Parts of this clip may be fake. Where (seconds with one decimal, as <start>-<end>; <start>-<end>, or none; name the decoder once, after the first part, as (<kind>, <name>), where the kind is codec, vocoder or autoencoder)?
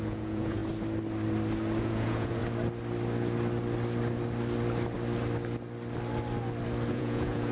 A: 0.0-0.6 (vocoder, Vocos); 1.8-2.4; 6.9-7.5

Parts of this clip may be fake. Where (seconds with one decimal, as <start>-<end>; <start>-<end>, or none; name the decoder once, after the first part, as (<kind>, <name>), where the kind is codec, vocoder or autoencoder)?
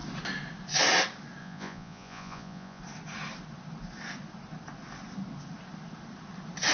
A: 1.4-2.8 (vocoder, Vocos)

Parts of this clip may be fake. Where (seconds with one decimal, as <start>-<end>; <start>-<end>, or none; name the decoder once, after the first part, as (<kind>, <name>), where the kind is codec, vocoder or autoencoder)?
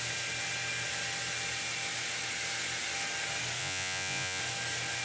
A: 3.6-4.4 (vocoder, Vocos)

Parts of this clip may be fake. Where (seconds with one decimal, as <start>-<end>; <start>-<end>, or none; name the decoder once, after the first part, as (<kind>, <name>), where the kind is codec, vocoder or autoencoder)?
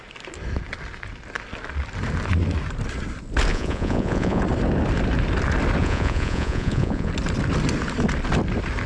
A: 3.5-4.4 (vocoder, Vocos); 5.8-7.1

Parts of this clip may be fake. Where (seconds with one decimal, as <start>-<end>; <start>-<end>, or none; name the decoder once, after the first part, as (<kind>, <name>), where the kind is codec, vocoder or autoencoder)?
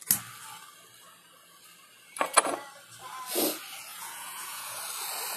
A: 3.9-4.8 (vocoder, Vocos)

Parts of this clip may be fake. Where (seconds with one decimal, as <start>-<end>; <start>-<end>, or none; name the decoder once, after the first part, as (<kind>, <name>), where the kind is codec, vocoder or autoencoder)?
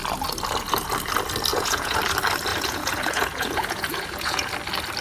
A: 1.5-2.0 (vocoder, Vocos); 2.5-4.5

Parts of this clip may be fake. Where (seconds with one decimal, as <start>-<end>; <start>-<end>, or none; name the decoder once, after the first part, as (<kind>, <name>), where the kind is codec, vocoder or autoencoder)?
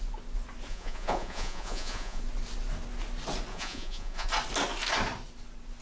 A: 0.7-2.2 (vocoder, Vocos); 3.5-4.3